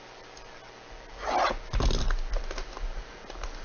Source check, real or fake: real